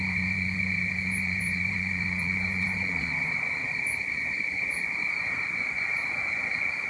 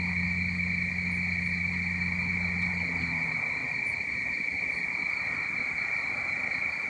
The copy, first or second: first